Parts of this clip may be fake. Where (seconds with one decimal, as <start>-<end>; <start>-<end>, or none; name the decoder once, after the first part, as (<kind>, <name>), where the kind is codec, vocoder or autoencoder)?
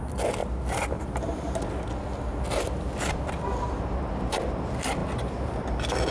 none